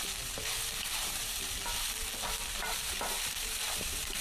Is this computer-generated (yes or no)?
yes